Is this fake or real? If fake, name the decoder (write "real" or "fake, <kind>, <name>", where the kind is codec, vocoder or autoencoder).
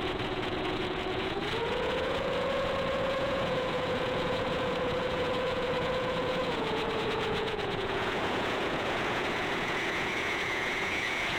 fake, vocoder, Vocos